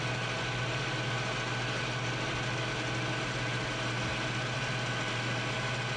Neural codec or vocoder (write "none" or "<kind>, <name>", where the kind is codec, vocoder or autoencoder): none